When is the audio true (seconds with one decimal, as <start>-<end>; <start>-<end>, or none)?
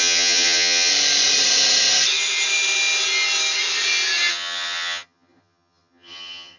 0.9-4.3